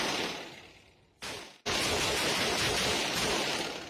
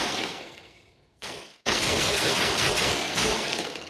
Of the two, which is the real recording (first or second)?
first